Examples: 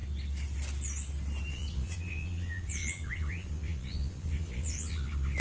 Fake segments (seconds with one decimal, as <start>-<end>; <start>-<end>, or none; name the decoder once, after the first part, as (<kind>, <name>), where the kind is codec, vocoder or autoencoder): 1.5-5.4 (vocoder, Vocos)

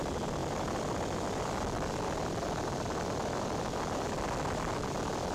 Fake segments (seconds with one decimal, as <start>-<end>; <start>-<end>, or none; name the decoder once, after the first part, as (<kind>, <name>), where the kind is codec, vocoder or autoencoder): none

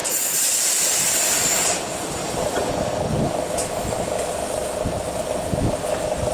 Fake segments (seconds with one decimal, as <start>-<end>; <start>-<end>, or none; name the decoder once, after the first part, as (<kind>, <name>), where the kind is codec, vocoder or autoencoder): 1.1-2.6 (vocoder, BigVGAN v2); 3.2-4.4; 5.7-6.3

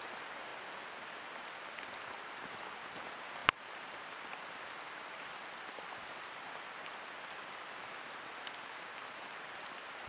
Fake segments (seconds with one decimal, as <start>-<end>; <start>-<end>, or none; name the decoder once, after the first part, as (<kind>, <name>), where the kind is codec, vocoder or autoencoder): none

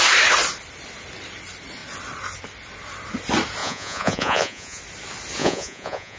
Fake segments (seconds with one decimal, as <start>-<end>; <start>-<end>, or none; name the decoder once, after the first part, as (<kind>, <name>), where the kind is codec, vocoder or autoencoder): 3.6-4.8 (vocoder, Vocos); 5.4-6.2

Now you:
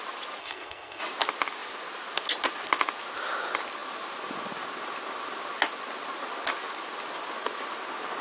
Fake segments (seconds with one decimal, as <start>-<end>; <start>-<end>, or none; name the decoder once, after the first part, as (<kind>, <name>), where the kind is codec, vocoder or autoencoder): 0.4-1.0 (codec, SNAC)

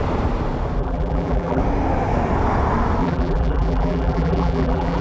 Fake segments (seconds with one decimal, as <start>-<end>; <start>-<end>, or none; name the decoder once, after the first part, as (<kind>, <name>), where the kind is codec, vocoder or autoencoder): 0.8-1.6 (vocoder, BigVGAN v2); 3.0-5.0